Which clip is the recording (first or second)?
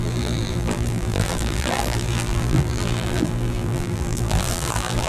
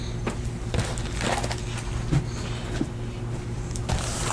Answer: second